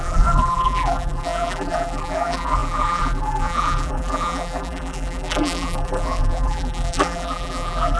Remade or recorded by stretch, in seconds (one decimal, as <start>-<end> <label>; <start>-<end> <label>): 0.0-8.0 remade